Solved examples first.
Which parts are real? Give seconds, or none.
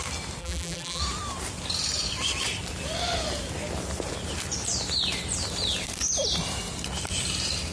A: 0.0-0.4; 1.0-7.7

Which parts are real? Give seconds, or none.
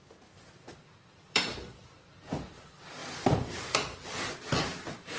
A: 0.0-0.6; 2.1-3.0; 4.5-5.2